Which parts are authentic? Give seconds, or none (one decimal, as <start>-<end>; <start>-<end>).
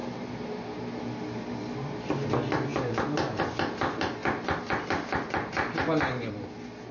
0.0-6.9